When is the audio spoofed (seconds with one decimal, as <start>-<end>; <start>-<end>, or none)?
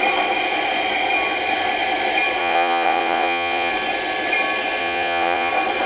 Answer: 2.4-3.7; 4.8-5.5